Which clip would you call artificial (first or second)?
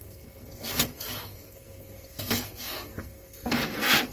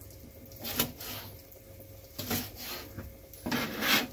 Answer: first